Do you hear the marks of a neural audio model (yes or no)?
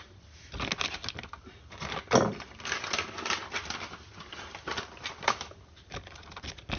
no